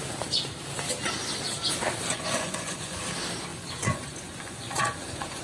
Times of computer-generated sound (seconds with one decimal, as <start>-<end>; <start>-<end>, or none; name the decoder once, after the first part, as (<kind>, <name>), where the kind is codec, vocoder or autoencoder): 2.0-3.0 (vocoder, Vocos); 3.5-5.4